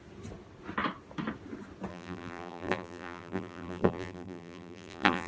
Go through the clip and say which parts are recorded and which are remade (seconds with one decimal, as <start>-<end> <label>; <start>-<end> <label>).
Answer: 0.0-1.9 recorded; 1.9-5.3 remade